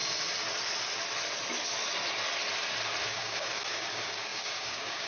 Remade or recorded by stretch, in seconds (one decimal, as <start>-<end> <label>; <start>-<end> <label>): 0.0-3.1 recorded; 3.1-5.1 remade